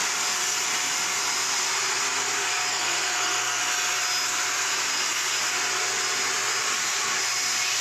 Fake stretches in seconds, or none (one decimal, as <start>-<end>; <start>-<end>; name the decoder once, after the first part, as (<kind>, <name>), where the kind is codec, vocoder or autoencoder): 2.7-3.6 (codec, SNAC)